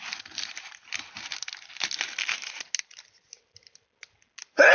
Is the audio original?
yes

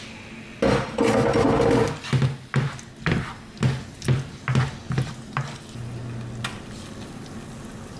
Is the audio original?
yes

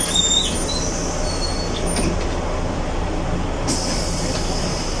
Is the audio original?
yes